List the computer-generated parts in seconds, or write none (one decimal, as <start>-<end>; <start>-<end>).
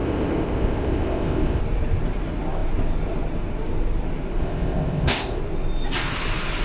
0.0-1.6; 4.4-5.4